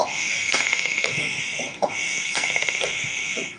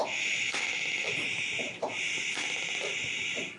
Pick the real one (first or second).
second